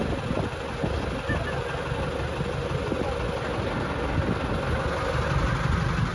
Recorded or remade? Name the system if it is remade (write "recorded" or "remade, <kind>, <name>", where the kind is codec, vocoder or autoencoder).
recorded